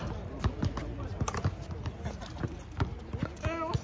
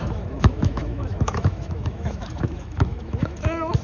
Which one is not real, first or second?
second